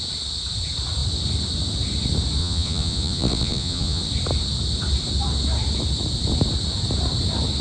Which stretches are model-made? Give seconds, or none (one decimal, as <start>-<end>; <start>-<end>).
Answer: 2.4-4.0